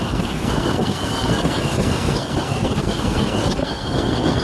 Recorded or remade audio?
remade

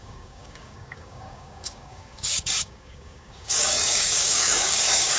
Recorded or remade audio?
remade